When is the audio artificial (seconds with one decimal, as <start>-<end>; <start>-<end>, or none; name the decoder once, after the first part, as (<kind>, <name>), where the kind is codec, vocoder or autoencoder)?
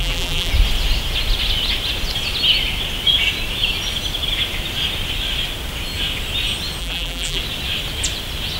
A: 0.0-0.5 (vocoder, BigVGAN v2); 6.8-7.4